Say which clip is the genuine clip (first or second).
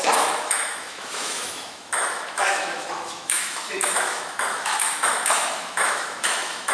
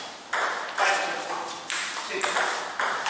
second